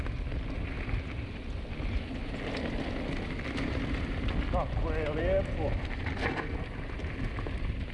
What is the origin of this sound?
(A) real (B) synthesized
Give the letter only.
A